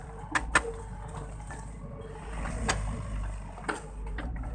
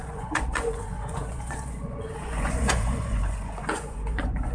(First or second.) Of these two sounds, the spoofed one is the second